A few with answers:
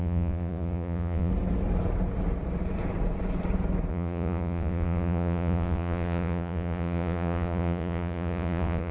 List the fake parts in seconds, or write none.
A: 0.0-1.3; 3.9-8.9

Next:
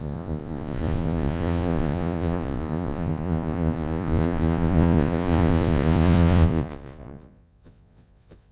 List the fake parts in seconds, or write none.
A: 0.0-8.5

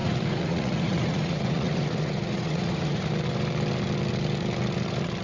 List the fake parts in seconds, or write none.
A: 0.0-3.1

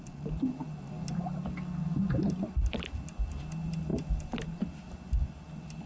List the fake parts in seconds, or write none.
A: none

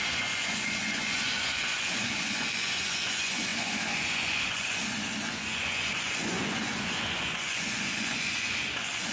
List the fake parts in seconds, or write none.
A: 0.0-9.1

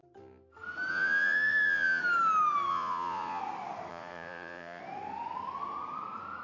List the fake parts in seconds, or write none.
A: 0.9-2.0; 2.7-3.4; 3.9-4.8

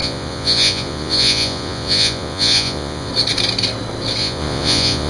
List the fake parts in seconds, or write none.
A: 0.0-3.1; 4.2-5.1

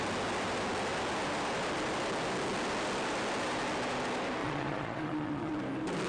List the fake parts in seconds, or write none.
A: 4.4-5.5